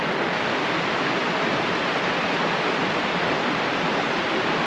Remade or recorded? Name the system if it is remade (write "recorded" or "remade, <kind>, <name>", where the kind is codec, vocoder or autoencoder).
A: recorded